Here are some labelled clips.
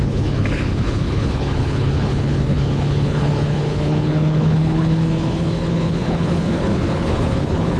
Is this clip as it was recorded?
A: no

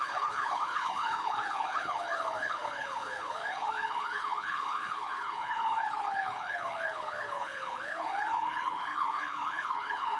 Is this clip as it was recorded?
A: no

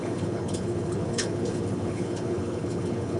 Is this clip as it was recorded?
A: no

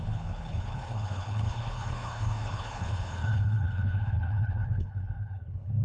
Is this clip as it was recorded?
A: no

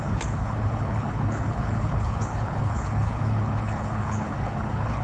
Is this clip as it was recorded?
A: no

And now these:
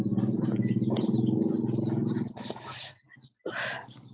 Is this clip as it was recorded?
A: yes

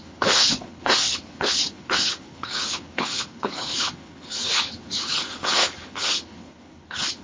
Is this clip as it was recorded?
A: no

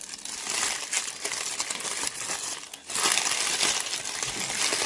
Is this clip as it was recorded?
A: yes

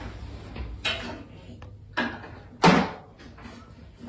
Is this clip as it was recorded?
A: yes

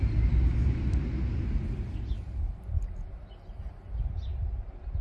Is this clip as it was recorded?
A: yes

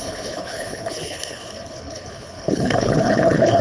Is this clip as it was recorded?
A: no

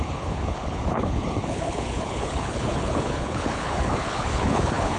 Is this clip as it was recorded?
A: no